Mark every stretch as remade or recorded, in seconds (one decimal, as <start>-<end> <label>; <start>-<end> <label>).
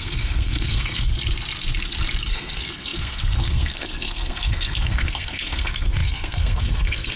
0.0-1.1 remade; 1.1-2.3 recorded; 2.3-7.2 remade